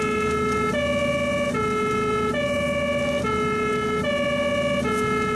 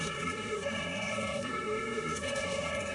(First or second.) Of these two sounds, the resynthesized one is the second